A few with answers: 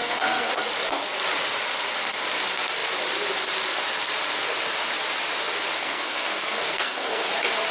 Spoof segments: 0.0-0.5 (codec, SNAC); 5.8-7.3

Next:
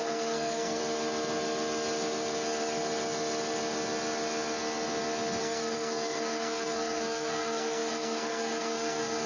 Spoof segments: 0.0-0.8 (codec, SNAC); 5.4-9.3